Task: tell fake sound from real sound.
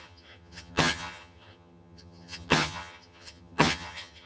fake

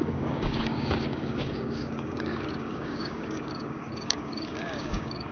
fake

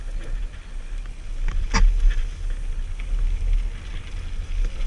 real